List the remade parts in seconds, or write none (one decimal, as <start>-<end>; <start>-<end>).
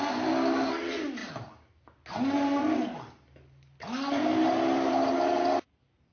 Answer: none